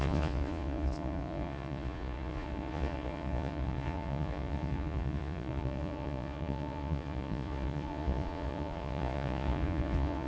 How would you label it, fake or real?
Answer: fake